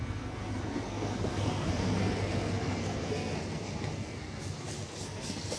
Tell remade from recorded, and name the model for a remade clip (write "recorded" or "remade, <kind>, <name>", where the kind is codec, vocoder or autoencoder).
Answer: remade, codec, SNAC